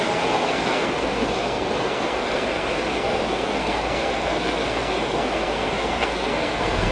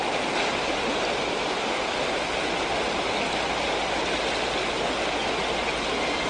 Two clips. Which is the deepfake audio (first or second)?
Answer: first